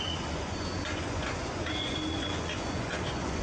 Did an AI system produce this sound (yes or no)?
yes